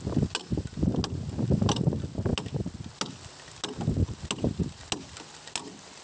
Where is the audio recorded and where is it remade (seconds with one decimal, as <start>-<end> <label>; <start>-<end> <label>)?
0.0-6.0 recorded